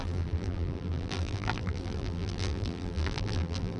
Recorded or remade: remade